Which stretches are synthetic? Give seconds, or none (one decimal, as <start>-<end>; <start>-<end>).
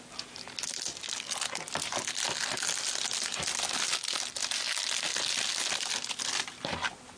none